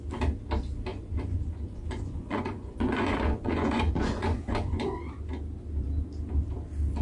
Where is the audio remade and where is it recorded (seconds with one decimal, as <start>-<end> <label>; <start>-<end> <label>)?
0.0-0.9 recorded; 0.9-5.1 remade; 5.1-7.0 recorded